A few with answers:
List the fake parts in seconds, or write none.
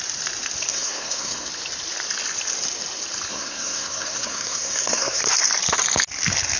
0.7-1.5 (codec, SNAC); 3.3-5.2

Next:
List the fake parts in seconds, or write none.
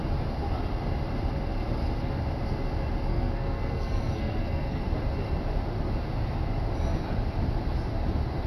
3.1-4.8 (codec, SNAC)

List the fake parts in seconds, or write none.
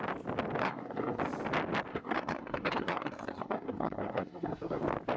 0.6-1.2 (codec, SNAC); 1.9-4.8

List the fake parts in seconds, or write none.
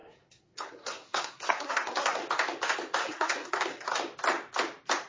0.0-2.2 (codec, SNAC); 3.0-3.9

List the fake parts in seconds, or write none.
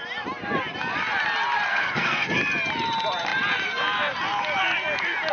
1.7-2.3 (codec, SNAC)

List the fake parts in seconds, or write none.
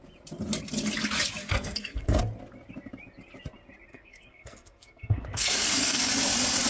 1.4-2.2 (codec, SNAC); 3.9-6.1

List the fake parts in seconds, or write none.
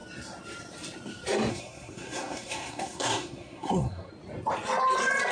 1.5-4.1 (codec, SNAC)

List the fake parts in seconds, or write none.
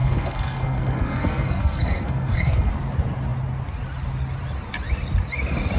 0.0-2.7 (codec, SNAC)